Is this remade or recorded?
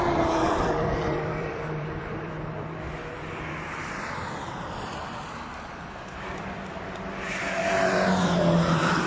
remade